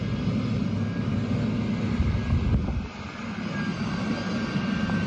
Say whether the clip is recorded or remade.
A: recorded